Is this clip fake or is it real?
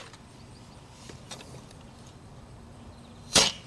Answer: fake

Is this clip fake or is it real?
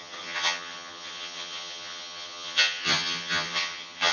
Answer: fake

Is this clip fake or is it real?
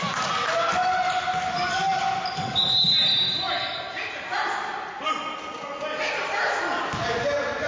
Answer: real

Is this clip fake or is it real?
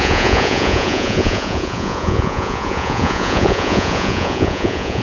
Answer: fake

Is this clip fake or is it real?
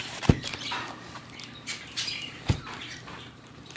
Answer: fake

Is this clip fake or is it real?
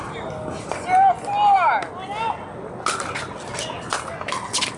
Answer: real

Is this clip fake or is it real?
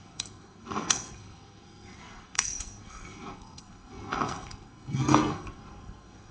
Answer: fake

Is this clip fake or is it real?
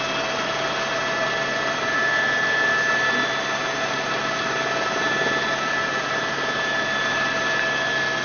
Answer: real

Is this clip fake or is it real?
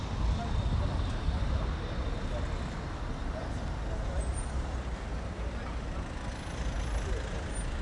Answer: real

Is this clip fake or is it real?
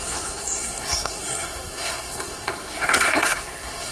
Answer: fake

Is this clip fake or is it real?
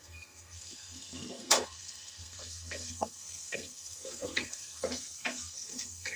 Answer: fake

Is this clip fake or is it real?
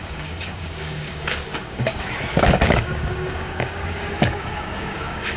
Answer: fake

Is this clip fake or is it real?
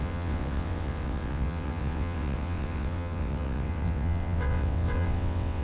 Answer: fake